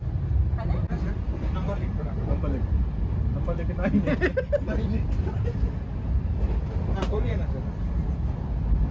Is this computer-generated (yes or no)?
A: yes